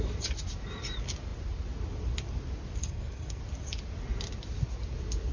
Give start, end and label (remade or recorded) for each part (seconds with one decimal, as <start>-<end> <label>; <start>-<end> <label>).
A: 0.0-2.8 recorded; 2.8-3.4 remade; 3.4-5.3 recorded

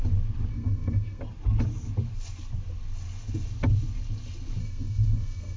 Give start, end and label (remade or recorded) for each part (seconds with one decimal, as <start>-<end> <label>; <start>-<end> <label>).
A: 0.0-0.5 recorded; 0.5-1.2 remade; 1.2-4.6 recorded; 4.6-5.6 remade

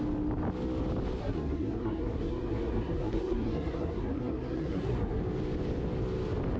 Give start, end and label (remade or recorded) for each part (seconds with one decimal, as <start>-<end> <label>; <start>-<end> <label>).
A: 0.0-1.2 recorded; 1.2-5.2 remade; 5.2-6.6 recorded